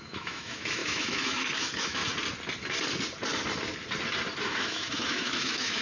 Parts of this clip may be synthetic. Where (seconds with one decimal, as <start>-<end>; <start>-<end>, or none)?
0.0-2.0; 4.4-5.8